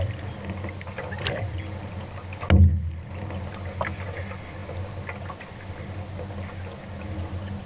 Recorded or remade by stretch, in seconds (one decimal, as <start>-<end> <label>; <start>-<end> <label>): 0.0-7.7 recorded